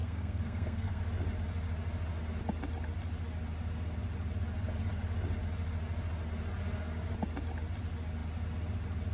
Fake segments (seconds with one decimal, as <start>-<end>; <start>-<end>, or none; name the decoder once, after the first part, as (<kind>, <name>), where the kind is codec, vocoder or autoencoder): 0.0-1.0 (codec, SNAC)